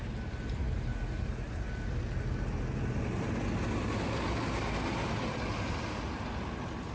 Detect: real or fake real